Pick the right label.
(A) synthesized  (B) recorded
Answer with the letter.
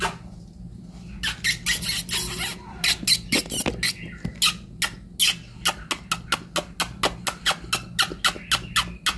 B